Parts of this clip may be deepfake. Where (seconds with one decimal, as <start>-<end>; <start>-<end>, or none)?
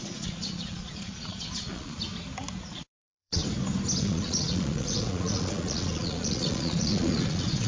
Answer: 0.0-2.0; 2.7-3.4; 4.0-7.7